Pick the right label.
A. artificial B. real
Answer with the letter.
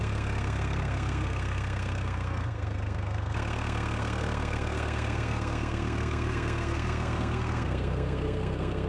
A